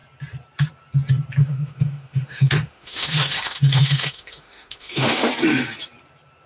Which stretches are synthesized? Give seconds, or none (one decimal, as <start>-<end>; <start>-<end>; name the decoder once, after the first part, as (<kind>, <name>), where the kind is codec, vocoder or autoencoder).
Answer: 1.4-5.3 (autoencoder, DAC-VAE)